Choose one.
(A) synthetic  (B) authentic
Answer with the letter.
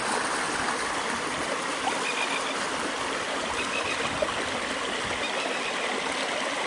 B